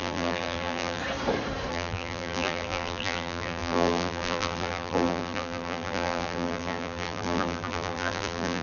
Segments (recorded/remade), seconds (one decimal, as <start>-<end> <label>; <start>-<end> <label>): 0.0-1.0 remade; 1.0-1.7 recorded; 1.7-8.6 remade